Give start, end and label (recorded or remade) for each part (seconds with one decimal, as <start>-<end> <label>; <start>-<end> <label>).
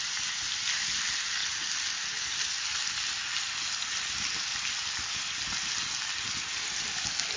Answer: 0.0-7.4 recorded